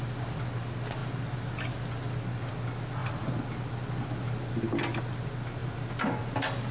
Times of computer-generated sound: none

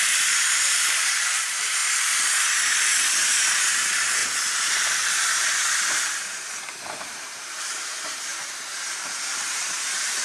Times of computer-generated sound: 0.0-1.8; 3.1-10.2

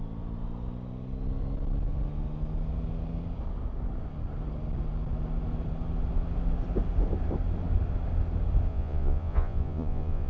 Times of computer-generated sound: 8.7-10.3

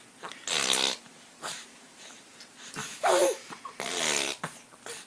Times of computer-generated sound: 2.8-3.5